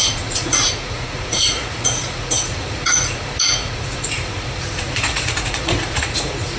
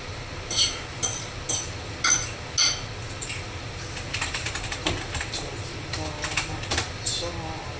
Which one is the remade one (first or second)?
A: first